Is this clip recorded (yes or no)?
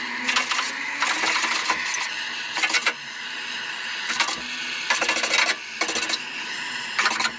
yes